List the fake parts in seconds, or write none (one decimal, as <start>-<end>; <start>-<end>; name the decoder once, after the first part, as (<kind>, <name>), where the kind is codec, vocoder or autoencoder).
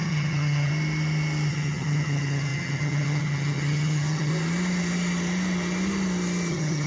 0.0-0.7 (vocoder, HiFi-GAN); 1.5-4.3; 6.5-6.9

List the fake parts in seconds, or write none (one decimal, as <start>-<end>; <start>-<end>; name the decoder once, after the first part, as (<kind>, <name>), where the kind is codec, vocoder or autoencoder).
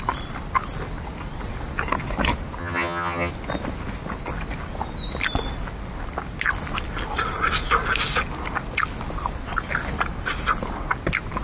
2.6-3.3 (vocoder, HiFi-GAN)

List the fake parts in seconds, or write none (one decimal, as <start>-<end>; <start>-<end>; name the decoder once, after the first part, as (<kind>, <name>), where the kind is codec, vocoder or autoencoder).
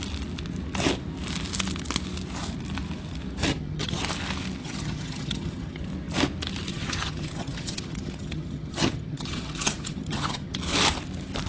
3.5-4.0 (vocoder, HiFi-GAN); 4.6-5.8; 6.7-10.5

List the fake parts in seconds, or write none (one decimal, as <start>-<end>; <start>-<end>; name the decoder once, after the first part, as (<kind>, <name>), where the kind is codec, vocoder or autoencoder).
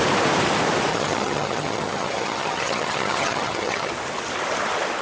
0.9-3.9 (vocoder, HiFi-GAN)